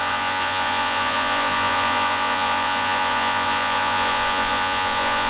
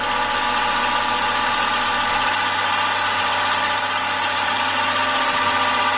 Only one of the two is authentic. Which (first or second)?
second